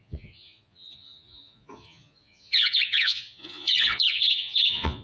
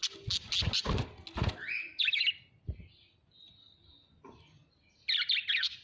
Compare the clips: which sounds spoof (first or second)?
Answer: first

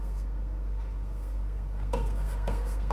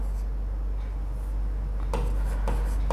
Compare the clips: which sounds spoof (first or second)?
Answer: first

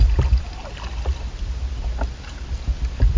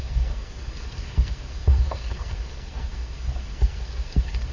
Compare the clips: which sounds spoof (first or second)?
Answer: second